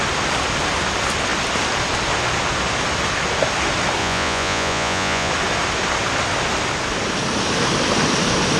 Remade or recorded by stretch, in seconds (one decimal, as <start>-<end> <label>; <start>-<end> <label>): 0.0-4.0 recorded; 4.0-5.3 remade; 5.3-8.6 recorded